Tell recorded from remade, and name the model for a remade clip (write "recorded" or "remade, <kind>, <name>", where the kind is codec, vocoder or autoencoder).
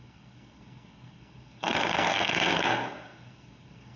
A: remade, codec, SNAC